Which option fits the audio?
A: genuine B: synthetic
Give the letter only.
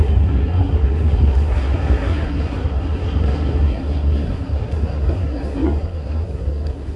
B